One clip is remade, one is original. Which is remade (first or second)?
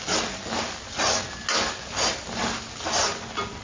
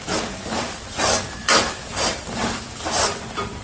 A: second